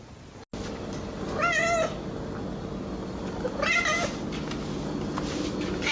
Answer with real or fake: real